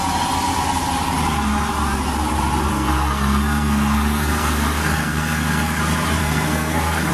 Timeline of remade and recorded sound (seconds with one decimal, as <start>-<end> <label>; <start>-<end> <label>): 0.0-2.7 recorded; 2.7-5.8 remade; 5.8-6.2 recorded; 6.2-7.1 remade